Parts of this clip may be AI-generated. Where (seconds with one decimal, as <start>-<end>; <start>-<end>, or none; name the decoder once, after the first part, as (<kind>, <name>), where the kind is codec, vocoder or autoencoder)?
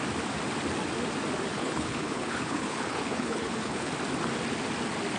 1.5-3.9 (codec, HILCodec)